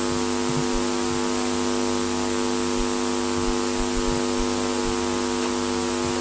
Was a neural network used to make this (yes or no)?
no